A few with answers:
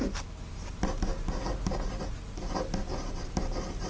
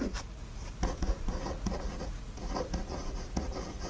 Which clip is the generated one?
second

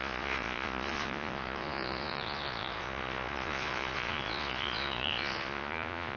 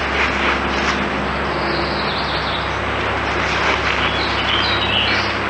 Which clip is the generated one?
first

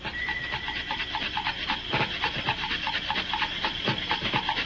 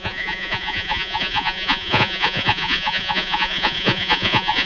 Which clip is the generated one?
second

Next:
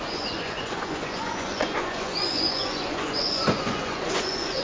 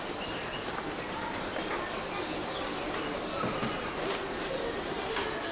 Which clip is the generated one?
first